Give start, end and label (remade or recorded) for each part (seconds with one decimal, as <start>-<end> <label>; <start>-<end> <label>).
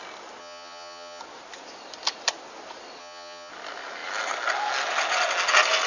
0.0-0.4 recorded; 0.4-1.2 remade; 1.2-3.0 recorded; 3.0-3.5 remade; 3.5-5.9 recorded